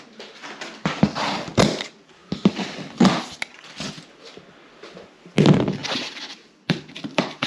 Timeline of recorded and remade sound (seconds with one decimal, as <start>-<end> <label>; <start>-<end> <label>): 0.0-5.8 recorded; 5.8-7.5 remade